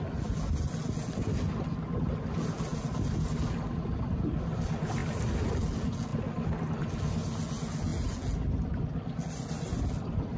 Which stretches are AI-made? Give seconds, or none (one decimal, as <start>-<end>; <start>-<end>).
none